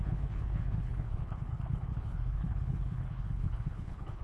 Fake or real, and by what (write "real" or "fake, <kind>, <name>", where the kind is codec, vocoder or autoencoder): fake, codec, HILCodec